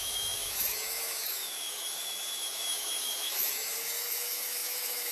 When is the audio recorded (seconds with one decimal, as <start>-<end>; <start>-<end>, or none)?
none